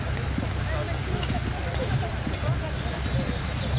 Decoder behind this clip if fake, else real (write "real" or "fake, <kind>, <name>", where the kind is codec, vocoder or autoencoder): real